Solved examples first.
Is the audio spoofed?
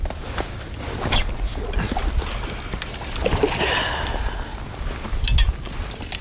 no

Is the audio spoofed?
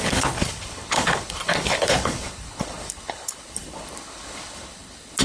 yes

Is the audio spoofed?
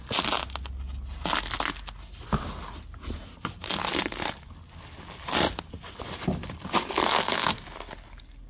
no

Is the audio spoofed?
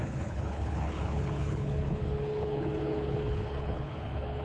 yes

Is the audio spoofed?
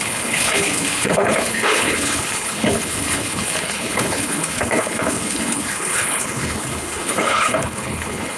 yes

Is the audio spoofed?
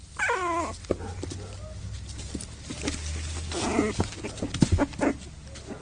no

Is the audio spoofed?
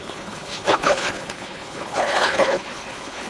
yes